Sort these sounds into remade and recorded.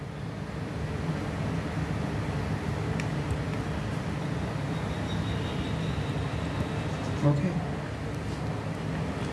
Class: recorded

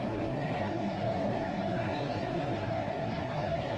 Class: remade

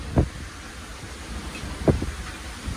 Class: recorded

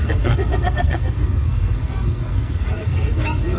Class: remade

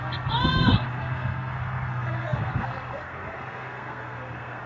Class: remade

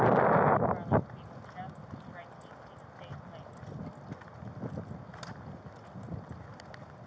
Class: recorded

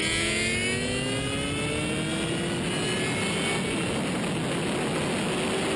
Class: recorded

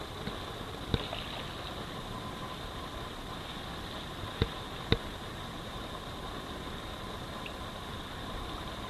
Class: recorded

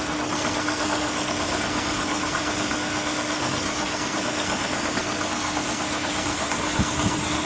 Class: remade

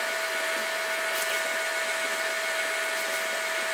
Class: recorded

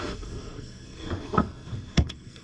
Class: remade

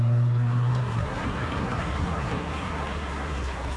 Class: remade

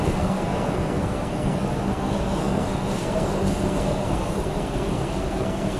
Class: remade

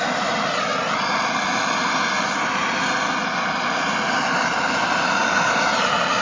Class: recorded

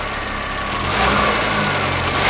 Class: recorded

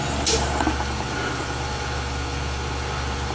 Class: recorded